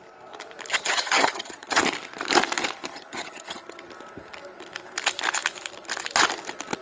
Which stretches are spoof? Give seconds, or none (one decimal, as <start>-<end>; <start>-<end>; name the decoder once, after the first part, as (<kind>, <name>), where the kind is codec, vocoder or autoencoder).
0.7-1.8 (vocoder, HiFi-GAN); 2.9-3.9